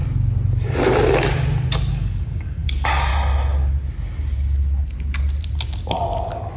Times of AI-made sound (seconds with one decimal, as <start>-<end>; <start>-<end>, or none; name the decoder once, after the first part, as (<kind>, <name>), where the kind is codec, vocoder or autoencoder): 1.9-3.1 (codec, DAC)